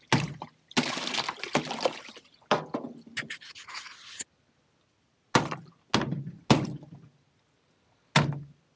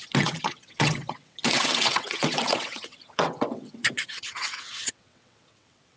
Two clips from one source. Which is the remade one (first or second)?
second